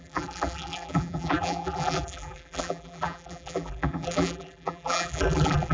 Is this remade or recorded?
remade